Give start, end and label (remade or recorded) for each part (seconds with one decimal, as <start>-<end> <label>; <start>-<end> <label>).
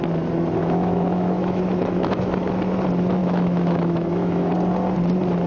0.0-0.6 recorded; 0.6-2.5 remade; 2.5-3.2 recorded; 3.2-4.5 remade; 4.5-5.5 recorded